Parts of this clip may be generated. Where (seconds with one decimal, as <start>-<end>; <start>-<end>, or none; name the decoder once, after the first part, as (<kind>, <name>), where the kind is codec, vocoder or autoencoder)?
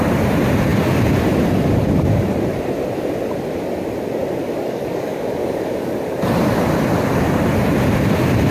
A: 4.4-6.0 (codec, DAC)